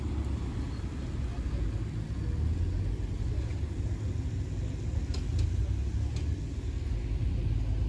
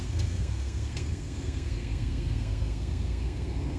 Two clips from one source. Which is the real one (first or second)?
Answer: first